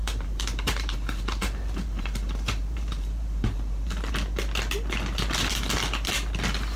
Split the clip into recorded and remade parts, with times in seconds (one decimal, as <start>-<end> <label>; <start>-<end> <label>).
0.0-4.1 remade; 4.1-6.8 recorded